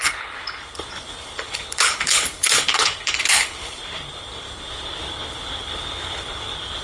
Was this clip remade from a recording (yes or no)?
yes